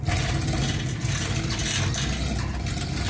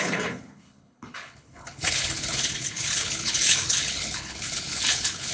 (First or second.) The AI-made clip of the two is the second